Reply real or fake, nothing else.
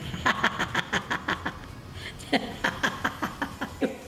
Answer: real